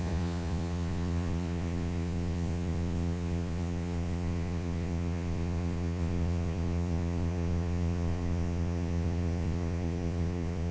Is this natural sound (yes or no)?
no